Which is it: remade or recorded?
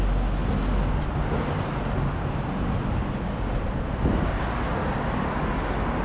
recorded